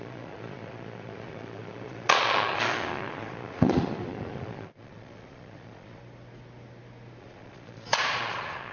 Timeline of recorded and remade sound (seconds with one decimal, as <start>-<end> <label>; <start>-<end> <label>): 0.0-6.0 remade; 6.0-7.2 recorded; 7.2-8.7 remade